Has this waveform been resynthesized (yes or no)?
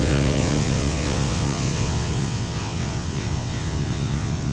yes